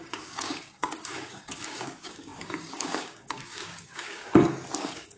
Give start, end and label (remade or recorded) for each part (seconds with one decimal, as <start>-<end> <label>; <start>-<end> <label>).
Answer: 0.0-4.3 remade; 4.3-4.8 recorded; 4.8-5.2 remade